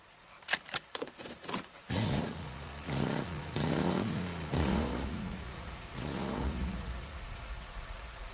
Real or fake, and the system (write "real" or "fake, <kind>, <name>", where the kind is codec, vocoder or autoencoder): fake, vocoder, Vocos